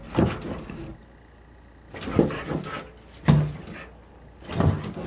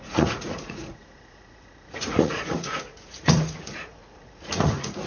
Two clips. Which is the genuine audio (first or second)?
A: first